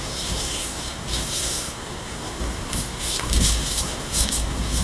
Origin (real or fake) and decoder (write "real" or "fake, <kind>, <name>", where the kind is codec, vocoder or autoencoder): fake, codec, SNAC